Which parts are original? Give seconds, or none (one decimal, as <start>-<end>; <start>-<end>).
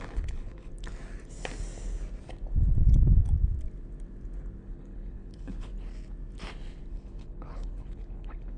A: 0.7-4.6; 5.7-6.9